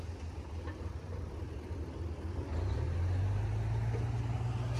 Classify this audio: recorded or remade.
recorded